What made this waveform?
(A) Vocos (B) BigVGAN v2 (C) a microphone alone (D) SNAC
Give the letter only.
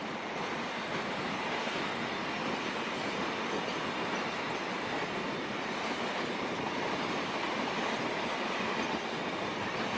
C